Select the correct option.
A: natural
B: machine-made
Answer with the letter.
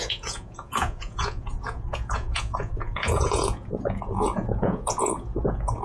B